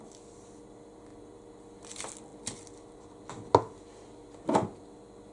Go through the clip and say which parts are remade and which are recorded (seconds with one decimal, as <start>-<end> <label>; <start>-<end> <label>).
0.0-5.3 recorded